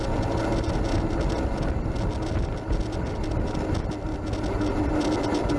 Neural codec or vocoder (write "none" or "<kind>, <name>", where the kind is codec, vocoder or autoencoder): none